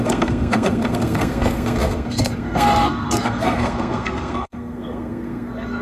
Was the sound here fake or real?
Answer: fake